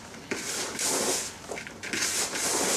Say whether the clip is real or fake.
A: real